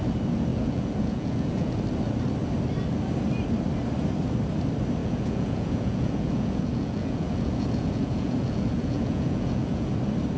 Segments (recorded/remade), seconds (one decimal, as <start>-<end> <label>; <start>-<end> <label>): 0.0-0.5 recorded; 0.5-1.8 remade; 1.8-5.0 recorded; 5.0-10.0 remade; 10.0-10.4 recorded